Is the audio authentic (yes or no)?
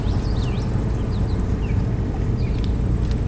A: yes